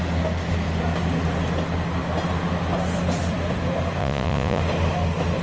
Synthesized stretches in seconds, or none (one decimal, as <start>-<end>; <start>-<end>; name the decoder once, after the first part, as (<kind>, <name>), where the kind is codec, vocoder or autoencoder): 4.0-4.6 (vocoder, Vocos)